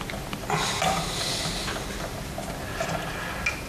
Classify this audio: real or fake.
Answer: real